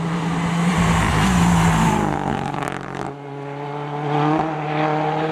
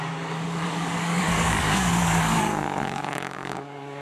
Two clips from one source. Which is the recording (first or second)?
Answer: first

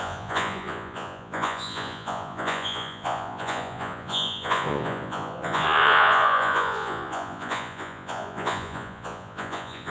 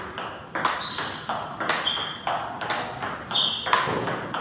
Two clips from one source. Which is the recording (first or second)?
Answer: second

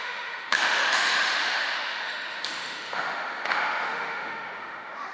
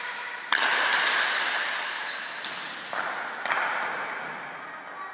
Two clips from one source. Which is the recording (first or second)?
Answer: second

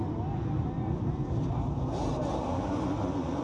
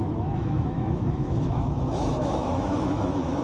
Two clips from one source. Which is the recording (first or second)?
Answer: first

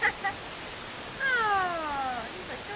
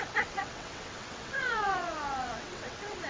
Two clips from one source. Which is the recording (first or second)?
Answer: first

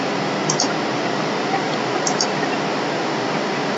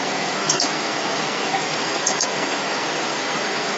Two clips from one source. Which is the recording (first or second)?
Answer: first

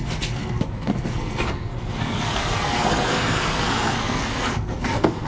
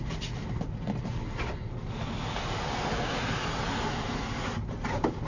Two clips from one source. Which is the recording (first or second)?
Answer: second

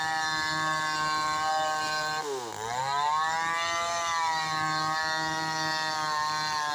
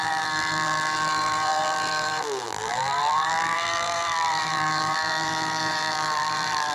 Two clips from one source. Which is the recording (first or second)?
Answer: first